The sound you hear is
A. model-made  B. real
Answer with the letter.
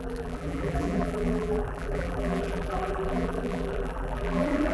A